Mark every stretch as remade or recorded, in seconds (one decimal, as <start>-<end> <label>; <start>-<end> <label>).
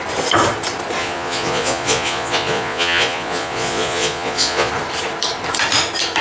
0.0-1.0 recorded; 1.0-4.7 remade; 4.7-6.2 recorded